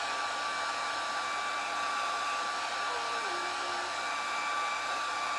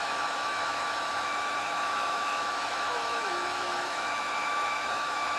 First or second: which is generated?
second